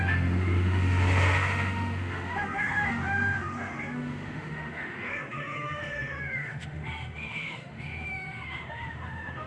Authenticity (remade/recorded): remade